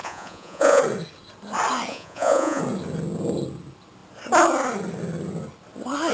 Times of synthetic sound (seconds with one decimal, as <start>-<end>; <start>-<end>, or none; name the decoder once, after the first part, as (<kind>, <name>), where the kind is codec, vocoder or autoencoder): 0.0-0.8 (vocoder, Vocos); 1.9-2.6